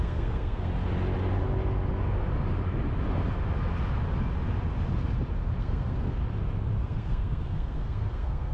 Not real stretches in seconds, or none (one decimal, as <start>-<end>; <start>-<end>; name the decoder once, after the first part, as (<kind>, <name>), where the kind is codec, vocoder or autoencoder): 0.0-0.7 (codec, SNAC); 5.6-6.2; 6.8-8.5